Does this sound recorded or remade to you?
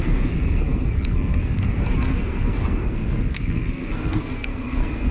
remade